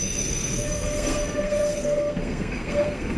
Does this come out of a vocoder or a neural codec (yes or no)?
yes